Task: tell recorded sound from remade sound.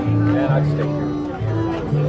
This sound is recorded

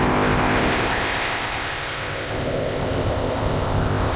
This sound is remade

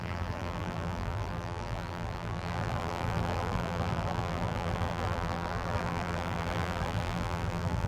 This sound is remade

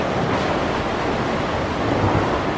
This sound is recorded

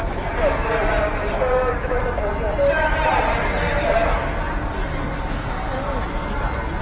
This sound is recorded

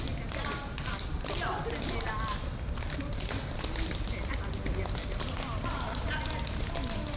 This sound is recorded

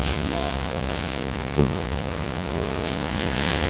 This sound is remade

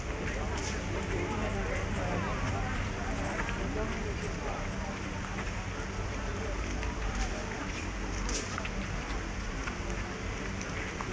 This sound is recorded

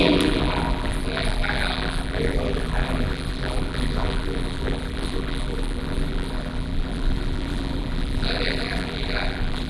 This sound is remade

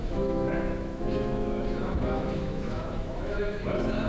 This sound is remade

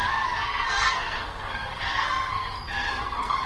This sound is remade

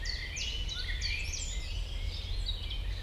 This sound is recorded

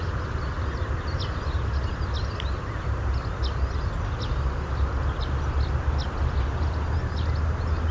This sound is recorded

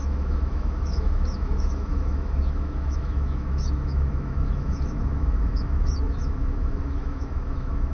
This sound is remade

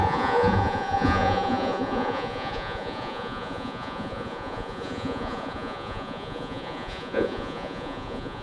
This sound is remade